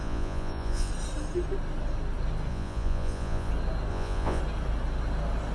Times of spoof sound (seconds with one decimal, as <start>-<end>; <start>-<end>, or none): 0.0-0.9; 2.5-3.5; 3.9-4.4